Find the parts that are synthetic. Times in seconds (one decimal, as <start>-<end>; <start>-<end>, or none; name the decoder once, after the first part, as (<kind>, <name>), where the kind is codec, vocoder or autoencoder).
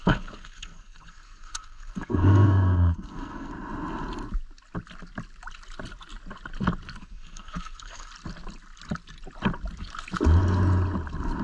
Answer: 0.0-3.5 (codec, SNAC); 7.0-8.1